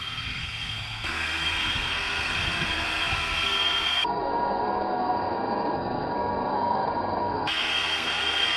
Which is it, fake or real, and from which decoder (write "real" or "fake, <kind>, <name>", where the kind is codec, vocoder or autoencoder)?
fake, codec, SNAC